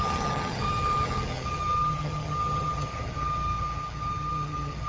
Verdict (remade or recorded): remade